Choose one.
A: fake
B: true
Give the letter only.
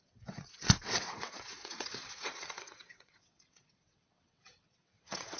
A